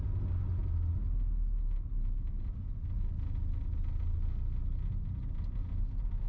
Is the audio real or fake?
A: real